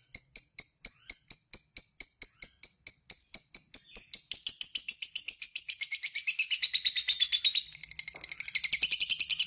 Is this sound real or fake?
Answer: real